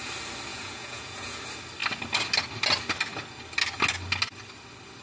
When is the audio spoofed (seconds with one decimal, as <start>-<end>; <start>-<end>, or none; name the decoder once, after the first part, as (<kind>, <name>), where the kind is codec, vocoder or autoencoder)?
0.5-1.4 (vocoder, Vocos)